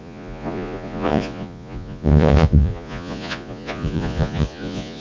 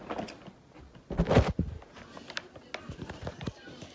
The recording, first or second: second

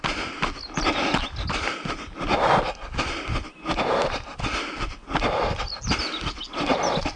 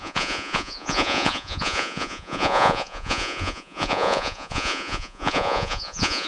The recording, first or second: first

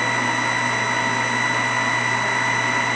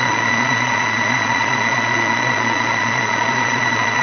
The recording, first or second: first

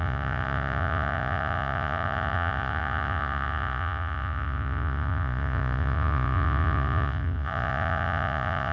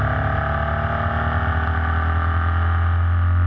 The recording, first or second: second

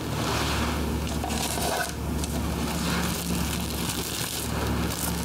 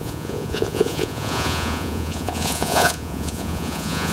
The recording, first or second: first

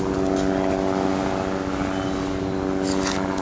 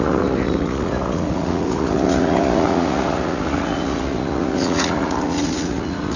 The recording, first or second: first